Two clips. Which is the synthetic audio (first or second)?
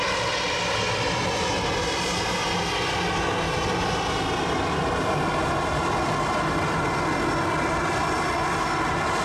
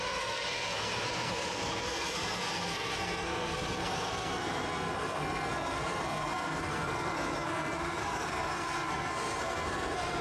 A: second